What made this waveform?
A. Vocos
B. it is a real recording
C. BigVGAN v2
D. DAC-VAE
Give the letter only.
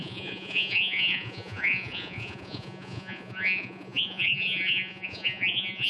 A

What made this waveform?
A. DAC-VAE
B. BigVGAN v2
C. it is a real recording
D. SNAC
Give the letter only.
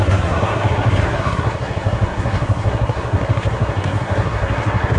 D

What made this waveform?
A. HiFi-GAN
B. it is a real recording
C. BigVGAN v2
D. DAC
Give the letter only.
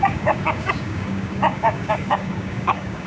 D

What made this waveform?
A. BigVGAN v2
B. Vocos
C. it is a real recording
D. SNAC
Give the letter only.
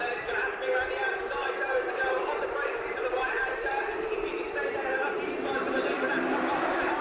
A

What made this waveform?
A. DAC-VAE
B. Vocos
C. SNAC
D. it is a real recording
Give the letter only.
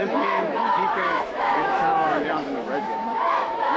A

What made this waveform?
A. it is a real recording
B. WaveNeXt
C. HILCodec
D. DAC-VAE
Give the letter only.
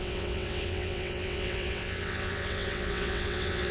B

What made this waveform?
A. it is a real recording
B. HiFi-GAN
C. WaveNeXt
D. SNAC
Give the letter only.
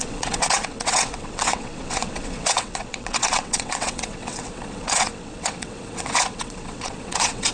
C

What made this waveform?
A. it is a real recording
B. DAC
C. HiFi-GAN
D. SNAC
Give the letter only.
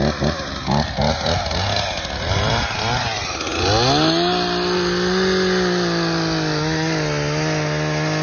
A